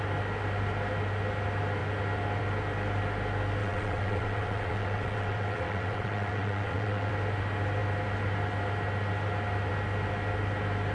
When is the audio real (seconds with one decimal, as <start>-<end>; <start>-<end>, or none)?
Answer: 0.0-3.6; 7.1-10.9